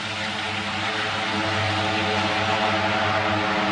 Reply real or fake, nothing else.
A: real